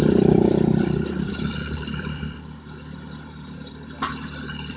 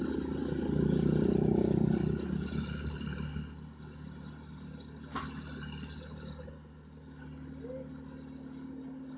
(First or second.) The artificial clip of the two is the first